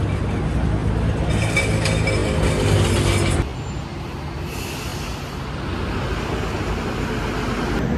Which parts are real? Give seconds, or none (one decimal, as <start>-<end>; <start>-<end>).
0.0-8.0